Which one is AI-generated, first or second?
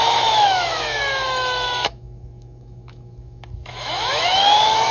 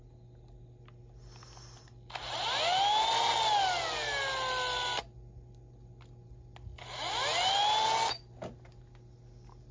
first